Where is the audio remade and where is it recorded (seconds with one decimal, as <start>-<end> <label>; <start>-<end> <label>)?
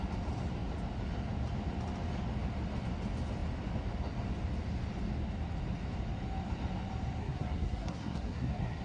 0.0-7.2 recorded; 7.2-8.8 remade